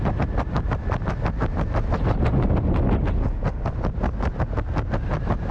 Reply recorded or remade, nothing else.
recorded